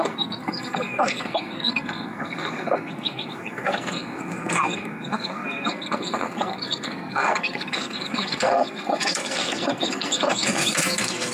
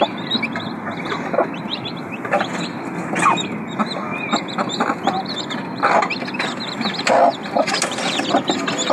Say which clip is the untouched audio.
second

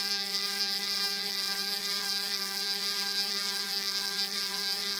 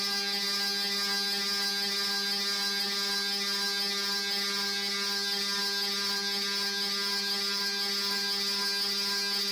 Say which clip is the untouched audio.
second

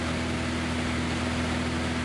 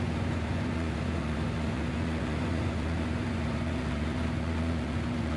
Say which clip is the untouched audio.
first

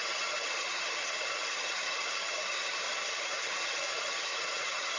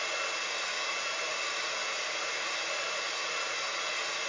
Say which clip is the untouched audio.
second